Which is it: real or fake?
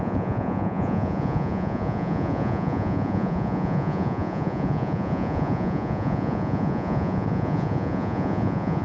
fake